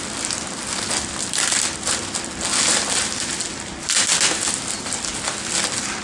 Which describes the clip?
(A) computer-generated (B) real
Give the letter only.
B